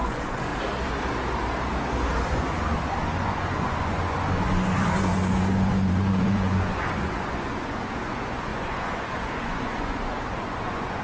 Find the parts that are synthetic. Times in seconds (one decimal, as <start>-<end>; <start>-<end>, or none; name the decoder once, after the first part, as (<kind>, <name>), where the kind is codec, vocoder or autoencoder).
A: 0.0-0.5 (vocoder, Vocos); 2.2-11.0

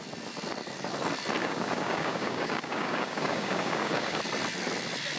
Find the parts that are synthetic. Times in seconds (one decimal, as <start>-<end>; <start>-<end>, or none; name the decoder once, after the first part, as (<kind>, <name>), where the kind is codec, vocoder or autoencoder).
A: 1.4-4.2 (codec, DAC)

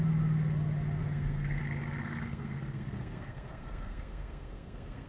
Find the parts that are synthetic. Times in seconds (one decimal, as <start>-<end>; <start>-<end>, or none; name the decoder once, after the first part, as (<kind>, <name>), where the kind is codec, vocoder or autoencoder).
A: 1.0-1.6 (codec, SNAC); 2.0-5.1

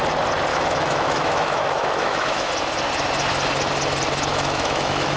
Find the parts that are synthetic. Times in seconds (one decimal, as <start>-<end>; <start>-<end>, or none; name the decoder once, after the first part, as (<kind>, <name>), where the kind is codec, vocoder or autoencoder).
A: 0.5-2.5 (autoencoder, DAC-VAE); 4.3-5.2